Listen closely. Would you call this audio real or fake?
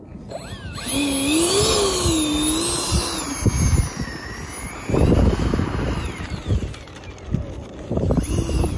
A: real